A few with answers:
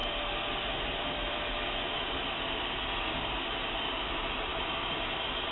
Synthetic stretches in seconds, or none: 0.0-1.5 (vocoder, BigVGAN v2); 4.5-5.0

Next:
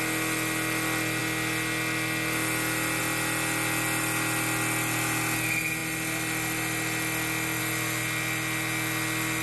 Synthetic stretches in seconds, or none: none

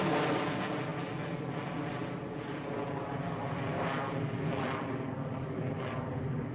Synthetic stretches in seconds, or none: none

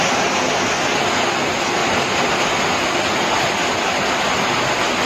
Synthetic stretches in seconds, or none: none

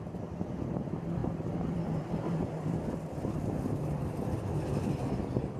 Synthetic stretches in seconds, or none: 1.2-4.6 (vocoder, BigVGAN v2)

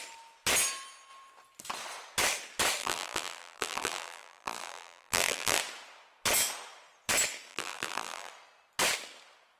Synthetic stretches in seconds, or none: 2.8-5.6 (vocoder, BigVGAN v2); 7.5-8.3